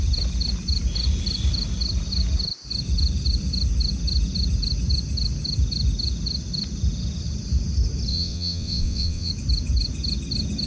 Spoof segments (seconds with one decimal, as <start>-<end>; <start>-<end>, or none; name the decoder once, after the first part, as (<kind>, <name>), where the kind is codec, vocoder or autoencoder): 8.1-9.3 (vocoder, WaveNeXt)